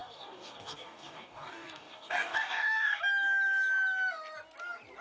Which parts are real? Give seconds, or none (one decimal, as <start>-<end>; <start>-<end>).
3.0-5.0